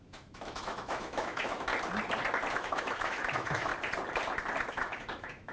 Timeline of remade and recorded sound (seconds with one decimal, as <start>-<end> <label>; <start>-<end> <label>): 0.0-1.7 remade; 1.7-2.5 recorded; 2.5-3.7 remade; 3.7-4.7 recorded; 4.7-5.5 remade